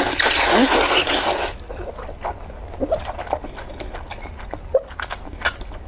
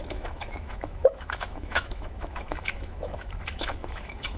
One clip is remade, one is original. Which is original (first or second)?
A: first